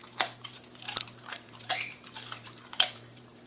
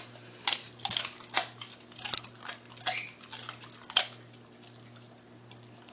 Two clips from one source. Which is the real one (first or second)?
second